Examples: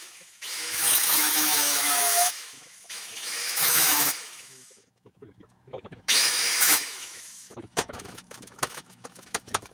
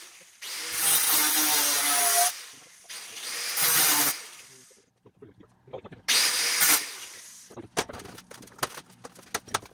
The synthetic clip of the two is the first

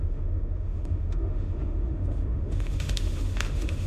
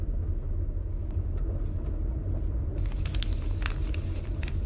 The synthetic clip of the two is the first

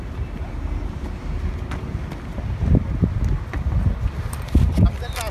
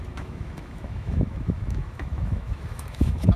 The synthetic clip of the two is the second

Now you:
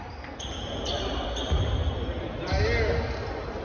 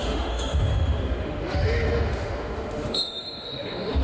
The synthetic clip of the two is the second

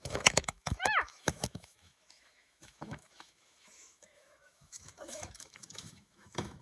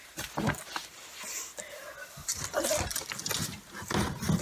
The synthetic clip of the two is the first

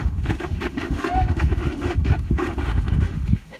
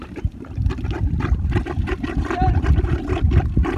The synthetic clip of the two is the first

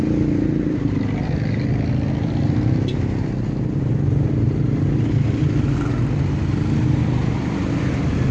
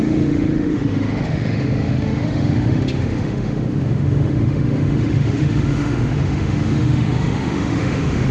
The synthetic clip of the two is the second